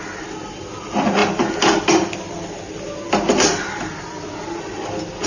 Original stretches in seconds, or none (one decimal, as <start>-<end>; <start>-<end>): 0.0-5.3